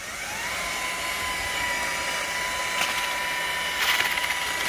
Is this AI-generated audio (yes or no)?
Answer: no